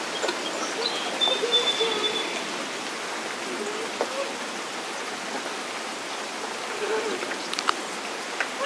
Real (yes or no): yes